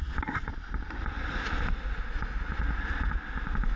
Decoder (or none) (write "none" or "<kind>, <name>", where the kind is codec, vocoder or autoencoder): none